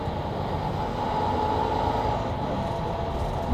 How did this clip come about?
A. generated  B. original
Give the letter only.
B